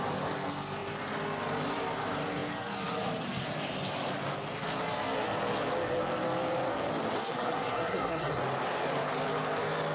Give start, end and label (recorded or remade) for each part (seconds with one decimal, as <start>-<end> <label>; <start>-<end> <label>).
0.0-7.2 recorded; 7.2-8.4 remade; 8.4-9.9 recorded